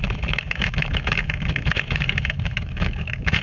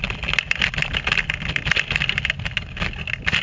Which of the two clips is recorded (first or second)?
second